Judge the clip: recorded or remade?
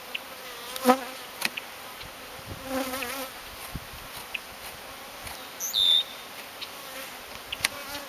recorded